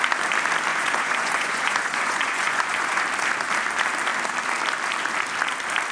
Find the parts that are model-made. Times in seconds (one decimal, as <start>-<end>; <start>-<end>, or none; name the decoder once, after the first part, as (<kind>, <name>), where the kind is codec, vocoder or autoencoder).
0.7-3.0 (vocoder, Vocos)

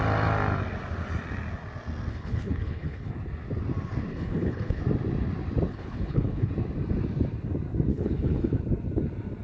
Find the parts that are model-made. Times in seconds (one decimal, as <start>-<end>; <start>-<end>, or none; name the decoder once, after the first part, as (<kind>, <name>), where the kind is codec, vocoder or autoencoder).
2.1-3.1 (codec, HILCodec); 4.1-4.8; 5.7-6.5; 7.9-8.5

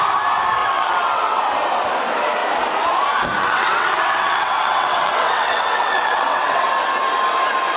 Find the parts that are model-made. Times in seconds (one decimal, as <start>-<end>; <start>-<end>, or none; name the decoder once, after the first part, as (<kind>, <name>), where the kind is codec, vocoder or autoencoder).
0.6-1.4 (vocoder, WaveNeXt); 3.4-6.6

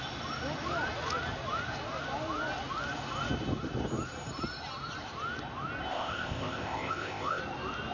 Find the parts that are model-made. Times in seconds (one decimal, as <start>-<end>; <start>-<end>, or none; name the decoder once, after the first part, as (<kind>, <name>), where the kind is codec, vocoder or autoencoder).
5.9-7.4 (codec, ZipCodec)

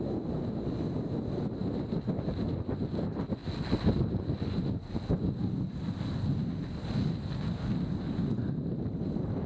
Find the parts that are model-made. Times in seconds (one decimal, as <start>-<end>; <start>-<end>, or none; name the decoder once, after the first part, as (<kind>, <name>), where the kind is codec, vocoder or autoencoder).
none

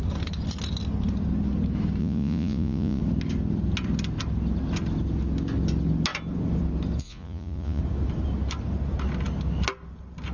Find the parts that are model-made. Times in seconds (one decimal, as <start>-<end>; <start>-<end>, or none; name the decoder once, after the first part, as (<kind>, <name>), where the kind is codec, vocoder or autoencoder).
2.0-3.0 (vocoder, Vocos); 7.0-7.8

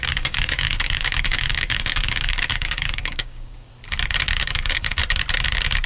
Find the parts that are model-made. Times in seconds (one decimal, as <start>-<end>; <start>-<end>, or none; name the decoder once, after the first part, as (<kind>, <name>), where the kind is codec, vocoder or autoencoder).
0.0-3.7 (codec, DAC); 4.4-5.0

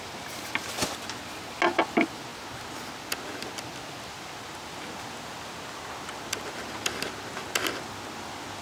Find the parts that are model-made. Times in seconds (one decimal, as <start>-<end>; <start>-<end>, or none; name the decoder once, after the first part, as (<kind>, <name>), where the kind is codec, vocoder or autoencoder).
none